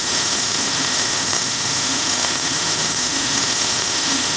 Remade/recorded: remade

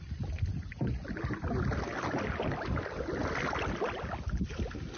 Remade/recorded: recorded